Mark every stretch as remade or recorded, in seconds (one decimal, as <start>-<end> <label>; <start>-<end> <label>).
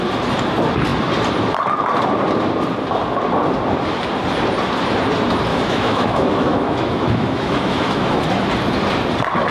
0.0-5.5 recorded; 5.5-8.2 remade; 8.2-9.5 recorded